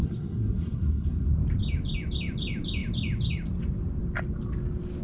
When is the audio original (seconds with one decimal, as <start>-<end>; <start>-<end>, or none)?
1.3-5.0